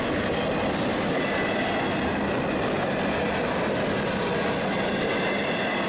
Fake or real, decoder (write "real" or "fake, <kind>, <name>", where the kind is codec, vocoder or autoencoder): real